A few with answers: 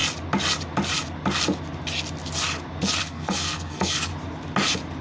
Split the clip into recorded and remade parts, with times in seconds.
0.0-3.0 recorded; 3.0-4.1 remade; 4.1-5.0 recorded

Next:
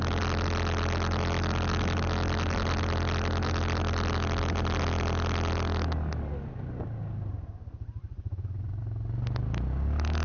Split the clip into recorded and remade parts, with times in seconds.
0.0-8.0 recorded; 8.0-8.8 remade; 8.8-10.2 recorded

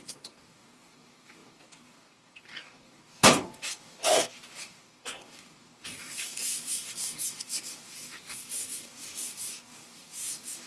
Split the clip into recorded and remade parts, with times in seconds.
0.0-10.7 remade

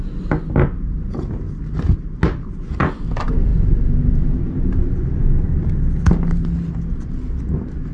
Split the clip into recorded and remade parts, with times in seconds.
0.0-7.9 recorded

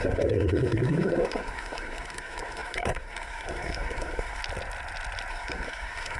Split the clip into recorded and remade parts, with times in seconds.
0.0-4.4 remade; 4.4-5.3 recorded; 5.3-6.2 remade

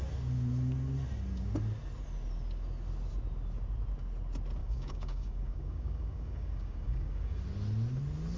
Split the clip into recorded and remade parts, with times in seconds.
0.0-4.6 recorded; 4.6-7.4 remade; 7.4-8.4 recorded

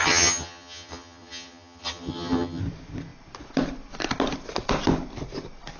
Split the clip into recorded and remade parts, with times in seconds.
0.0-2.6 remade; 2.6-5.8 recorded

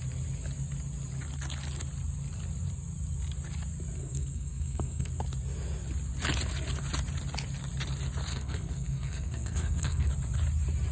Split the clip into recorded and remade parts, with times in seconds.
0.0-4.0 recorded; 4.0-5.2 remade; 5.2-8.3 recorded; 8.3-10.1 remade; 10.1-10.9 recorded